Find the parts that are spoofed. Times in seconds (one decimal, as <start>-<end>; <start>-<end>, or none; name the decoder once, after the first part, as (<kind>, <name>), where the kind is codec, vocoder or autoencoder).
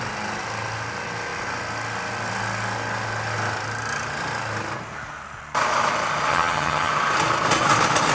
6.3-6.9 (vocoder, HiFi-GAN)